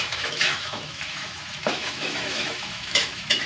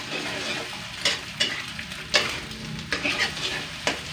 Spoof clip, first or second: first